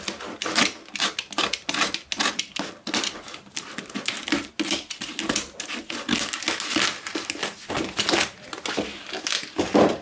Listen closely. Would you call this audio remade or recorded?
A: recorded